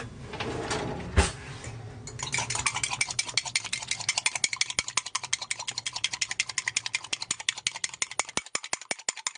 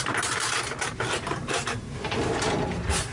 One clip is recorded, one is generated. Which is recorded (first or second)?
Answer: first